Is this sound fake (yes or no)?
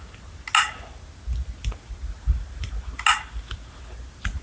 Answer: no